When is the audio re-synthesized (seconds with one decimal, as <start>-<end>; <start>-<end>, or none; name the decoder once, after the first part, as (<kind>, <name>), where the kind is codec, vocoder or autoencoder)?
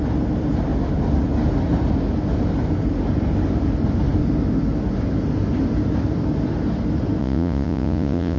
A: 7.2-8.4 (vocoder, Vocos)